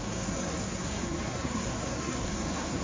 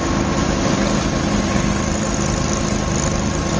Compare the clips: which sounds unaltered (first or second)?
second